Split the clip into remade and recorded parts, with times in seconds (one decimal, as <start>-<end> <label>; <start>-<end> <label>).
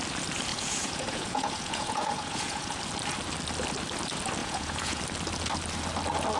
0.0-0.5 recorded; 0.5-2.8 remade; 2.8-4.4 recorded; 4.4-5.0 remade; 5.0-6.4 recorded